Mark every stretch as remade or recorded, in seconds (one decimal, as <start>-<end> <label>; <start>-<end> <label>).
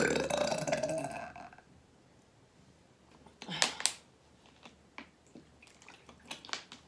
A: 0.0-6.9 recorded